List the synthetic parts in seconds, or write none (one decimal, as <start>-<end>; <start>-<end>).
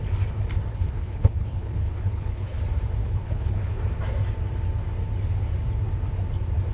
0.7-2.6; 3.0-3.8